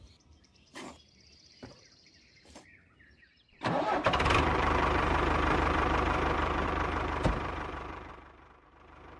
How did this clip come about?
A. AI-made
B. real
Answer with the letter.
A